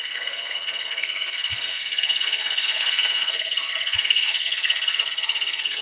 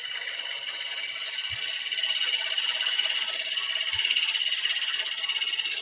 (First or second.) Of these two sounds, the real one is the second